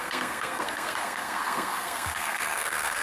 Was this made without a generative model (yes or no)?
no